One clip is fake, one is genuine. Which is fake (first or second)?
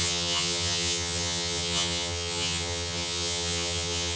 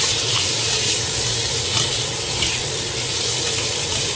first